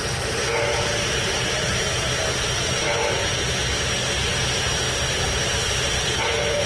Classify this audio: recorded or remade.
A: recorded